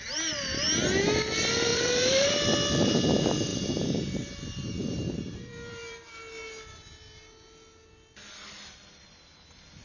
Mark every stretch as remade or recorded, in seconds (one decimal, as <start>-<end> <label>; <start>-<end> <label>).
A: 0.0-1.7 recorded; 1.7-2.3 remade; 2.3-3.5 recorded; 3.5-6.1 remade; 6.1-9.8 recorded